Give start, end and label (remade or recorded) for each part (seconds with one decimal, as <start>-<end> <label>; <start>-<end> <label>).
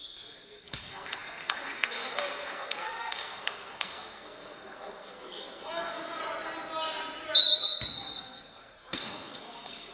0.0-6.2 remade; 6.2-7.4 recorded; 7.4-9.9 remade